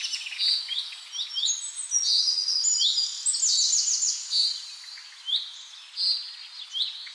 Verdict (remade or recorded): recorded